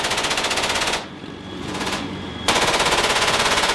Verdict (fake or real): fake